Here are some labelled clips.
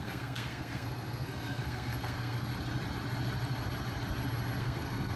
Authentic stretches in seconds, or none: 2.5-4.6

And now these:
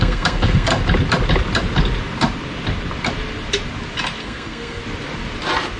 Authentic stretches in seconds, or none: 0.7-4.2; 4.8-5.8

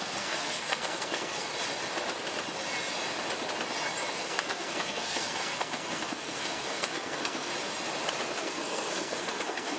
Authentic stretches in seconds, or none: 1.5-4.1; 7.5-8.4

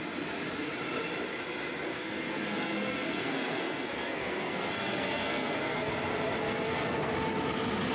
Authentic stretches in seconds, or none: 0.0-1.9; 5.9-6.4; 7.1-7.9

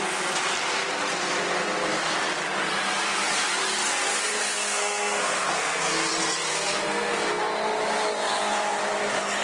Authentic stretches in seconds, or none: 0.0-4.4; 6.1-6.5; 7.4-9.4